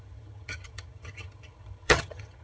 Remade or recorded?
remade